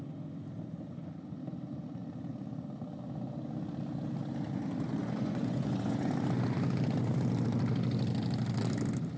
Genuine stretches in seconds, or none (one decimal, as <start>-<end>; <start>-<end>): 0.0-5.0; 6.1-9.2